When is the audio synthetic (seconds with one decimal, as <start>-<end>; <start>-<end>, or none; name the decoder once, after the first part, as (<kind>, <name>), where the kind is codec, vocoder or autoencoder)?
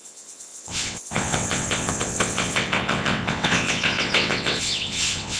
0.0-5.4 (vocoder, WaveNeXt)